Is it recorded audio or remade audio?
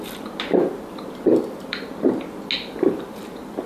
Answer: recorded